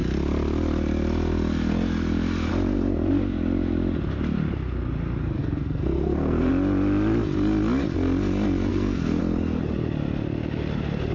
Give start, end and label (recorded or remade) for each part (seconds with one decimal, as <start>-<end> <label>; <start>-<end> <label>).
0.0-5.4 recorded; 5.4-6.5 remade; 6.5-8.7 recorded; 8.7-9.2 remade; 9.2-11.1 recorded